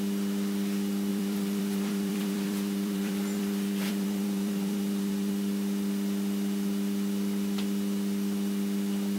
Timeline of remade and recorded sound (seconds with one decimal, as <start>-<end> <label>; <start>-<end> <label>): 0.0-1.1 recorded; 1.1-5.3 remade; 5.3-9.2 recorded